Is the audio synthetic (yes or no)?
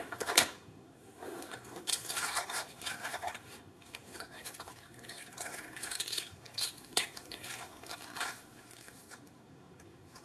yes